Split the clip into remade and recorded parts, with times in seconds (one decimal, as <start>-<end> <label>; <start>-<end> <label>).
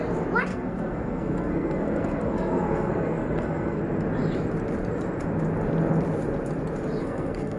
0.0-0.5 recorded; 0.5-3.8 remade; 3.8-7.0 recorded; 7.0-7.6 remade